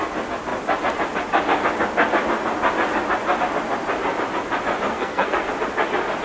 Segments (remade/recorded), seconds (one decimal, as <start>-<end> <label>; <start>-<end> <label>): 0.0-4.9 recorded; 4.9-5.5 remade; 5.5-6.2 recorded